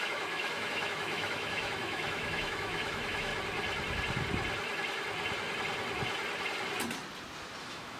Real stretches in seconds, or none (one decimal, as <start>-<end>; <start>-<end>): 3.3-7.6

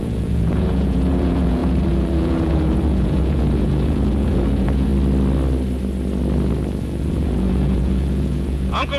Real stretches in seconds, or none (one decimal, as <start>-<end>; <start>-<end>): 4.9-6.8

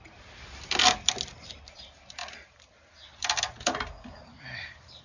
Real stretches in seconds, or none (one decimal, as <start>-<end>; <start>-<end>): 0.0-5.0

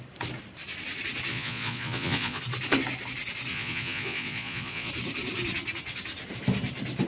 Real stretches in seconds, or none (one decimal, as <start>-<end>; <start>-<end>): 0.0-1.3; 2.4-3.5; 4.9-7.1

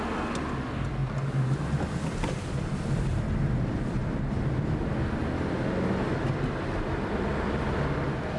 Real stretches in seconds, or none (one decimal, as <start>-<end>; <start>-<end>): 1.0-1.7; 4.0-4.8; 5.2-6.8

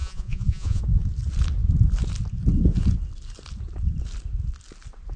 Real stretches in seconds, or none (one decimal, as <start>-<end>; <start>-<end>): 0.8-5.2

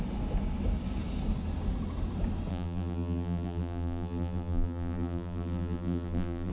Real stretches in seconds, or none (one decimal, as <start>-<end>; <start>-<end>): 0.0-2.5

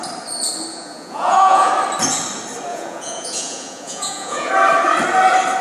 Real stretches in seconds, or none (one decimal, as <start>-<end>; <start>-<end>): 0.0-0.7; 1.7-2.7; 4.5-5.6